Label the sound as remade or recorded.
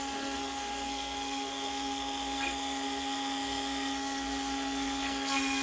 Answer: remade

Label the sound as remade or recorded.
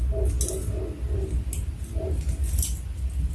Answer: recorded